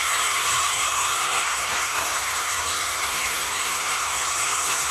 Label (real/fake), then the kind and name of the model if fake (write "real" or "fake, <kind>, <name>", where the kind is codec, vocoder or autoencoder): fake, codec, SNAC